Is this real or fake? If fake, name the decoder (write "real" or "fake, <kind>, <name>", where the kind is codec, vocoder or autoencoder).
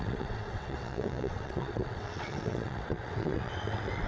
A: fake, vocoder, WaveNeXt